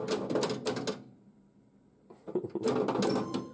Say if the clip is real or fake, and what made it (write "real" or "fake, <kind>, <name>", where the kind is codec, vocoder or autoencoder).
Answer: real